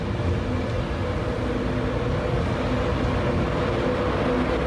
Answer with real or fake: real